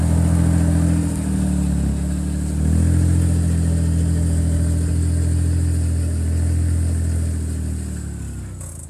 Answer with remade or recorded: recorded